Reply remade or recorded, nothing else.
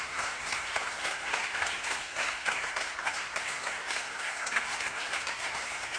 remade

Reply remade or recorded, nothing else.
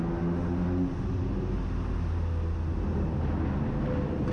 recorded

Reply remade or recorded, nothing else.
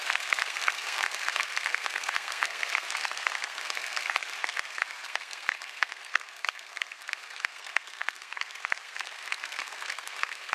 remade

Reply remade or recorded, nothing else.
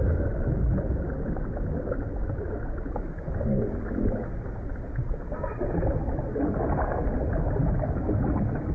recorded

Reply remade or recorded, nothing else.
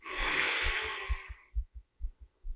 remade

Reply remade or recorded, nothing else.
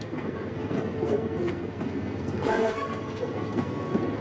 remade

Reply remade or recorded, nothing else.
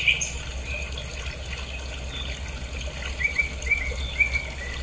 recorded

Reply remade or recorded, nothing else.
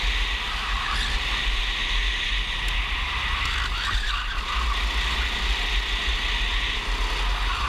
recorded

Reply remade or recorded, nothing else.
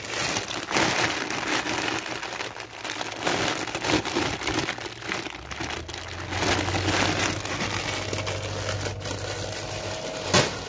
recorded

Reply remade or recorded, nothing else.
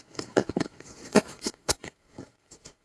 remade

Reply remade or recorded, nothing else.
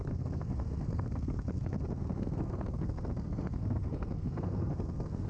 remade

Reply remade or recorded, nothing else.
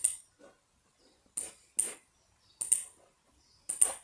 recorded